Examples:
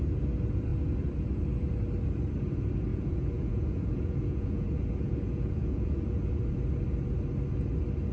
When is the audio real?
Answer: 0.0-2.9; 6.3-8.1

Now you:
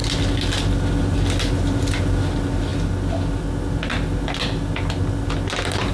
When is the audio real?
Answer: 0.0-5.9

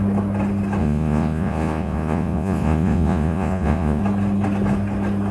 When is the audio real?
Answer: 0.0-0.8; 4.0-5.3